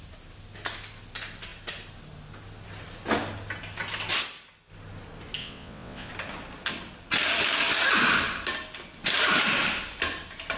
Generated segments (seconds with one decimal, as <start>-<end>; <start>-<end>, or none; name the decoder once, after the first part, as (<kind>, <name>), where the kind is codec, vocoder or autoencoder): 5.4-6.1 (vocoder, WaveNeXt)